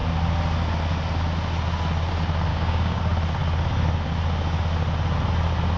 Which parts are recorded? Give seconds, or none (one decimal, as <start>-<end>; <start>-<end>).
0.0-2.5; 3.0-5.8

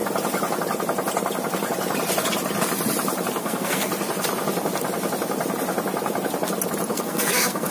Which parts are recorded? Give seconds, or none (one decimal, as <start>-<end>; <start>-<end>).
0.0-3.4; 3.9-6.9

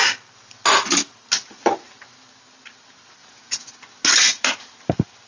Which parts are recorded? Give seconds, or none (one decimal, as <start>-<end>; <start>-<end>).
0.0-3.2; 3.7-5.3

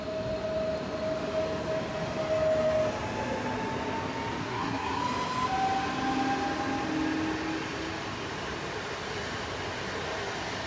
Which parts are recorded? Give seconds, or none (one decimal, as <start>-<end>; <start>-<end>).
0.0-4.4; 5.0-10.7

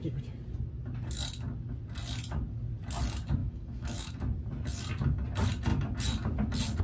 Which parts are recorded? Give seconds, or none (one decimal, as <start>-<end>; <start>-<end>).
0.0-3.4; 4.1-6.8

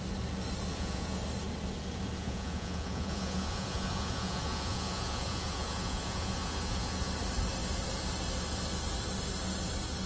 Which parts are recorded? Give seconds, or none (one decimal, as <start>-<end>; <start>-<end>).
0.0-0.7; 1.2-2.2; 7.1-10.1

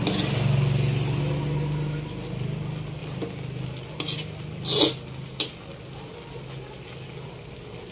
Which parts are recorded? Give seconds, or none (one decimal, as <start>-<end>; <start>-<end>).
0.0-7.9